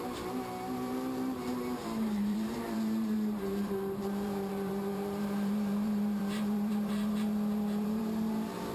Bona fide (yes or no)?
no